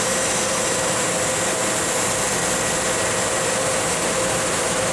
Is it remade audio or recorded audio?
recorded